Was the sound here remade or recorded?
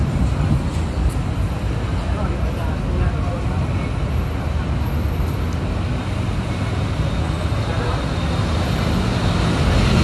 recorded